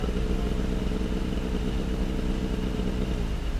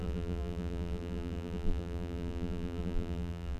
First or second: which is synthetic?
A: second